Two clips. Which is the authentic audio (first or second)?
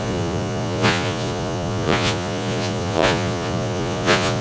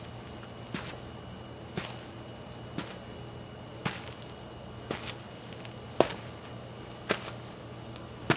second